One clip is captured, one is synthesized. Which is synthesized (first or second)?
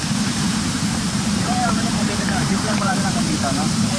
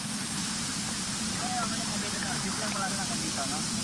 first